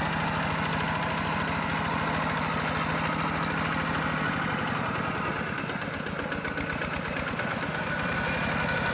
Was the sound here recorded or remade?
recorded